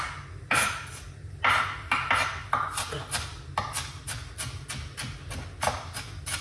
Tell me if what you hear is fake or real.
real